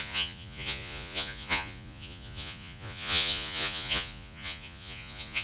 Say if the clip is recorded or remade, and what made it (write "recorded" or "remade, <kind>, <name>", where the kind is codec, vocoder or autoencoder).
remade, vocoder, Vocos